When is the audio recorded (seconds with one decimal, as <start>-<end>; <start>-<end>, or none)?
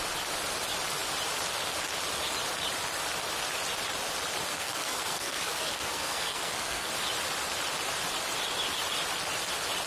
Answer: 0.0-4.5; 6.9-9.9